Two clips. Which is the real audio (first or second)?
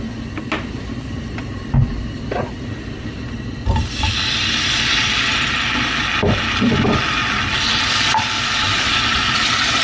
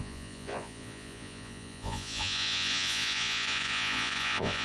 first